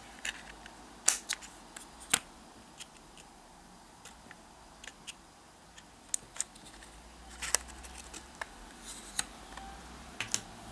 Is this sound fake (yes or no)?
no